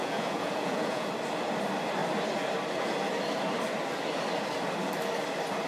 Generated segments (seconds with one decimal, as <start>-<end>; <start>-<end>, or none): 0.0-1.1